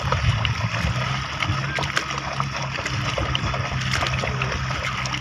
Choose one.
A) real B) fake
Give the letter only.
A